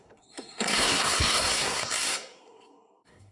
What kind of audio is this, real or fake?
fake